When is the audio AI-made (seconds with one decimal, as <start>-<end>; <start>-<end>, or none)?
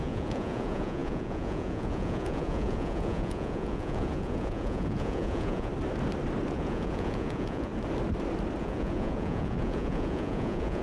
0.0-5.7; 6.5-7.7; 8.6-10.8